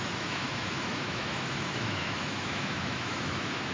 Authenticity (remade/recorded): remade